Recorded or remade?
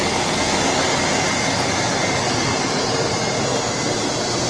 recorded